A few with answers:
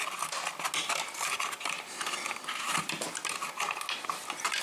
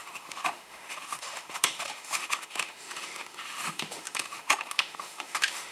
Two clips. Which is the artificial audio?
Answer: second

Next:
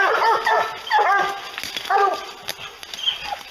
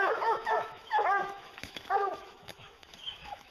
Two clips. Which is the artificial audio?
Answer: second